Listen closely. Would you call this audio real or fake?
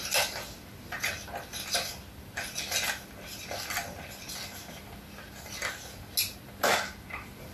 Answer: real